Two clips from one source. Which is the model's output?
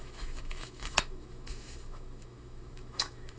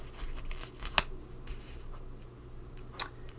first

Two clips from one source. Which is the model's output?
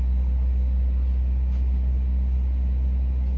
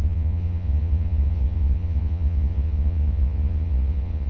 second